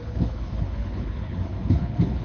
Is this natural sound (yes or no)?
no